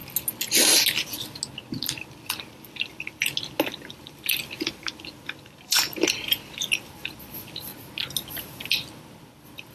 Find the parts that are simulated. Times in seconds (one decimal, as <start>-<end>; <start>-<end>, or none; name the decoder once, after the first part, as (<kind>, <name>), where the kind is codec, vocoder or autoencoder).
1.7-3.2 (vocoder, BigVGAN v2); 3.9-7.7; 8.3-9.7